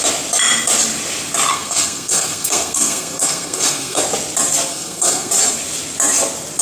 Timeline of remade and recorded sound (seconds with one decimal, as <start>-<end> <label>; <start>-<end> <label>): 0.0-1.5 recorded; 1.5-4.0 remade; 4.0-4.7 recorded; 4.7-5.3 remade; 5.3-6.6 recorded

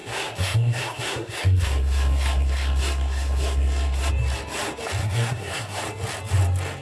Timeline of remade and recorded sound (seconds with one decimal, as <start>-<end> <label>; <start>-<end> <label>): 0.0-4.1 remade; 4.1-5.0 recorded; 5.0-5.8 remade; 5.8-6.8 recorded

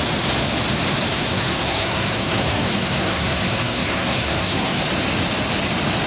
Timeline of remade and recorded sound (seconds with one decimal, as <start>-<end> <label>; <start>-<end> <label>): 0.0-1.1 recorded; 1.1-4.8 remade; 4.8-6.1 recorded